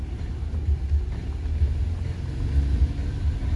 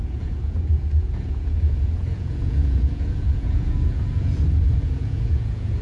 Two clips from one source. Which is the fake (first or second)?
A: second